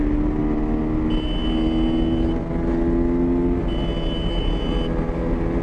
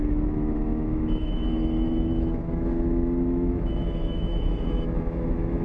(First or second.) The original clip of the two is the first